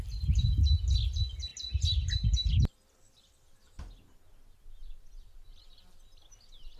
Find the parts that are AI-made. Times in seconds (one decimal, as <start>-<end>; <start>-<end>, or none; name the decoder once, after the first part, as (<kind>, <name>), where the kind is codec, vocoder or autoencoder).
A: none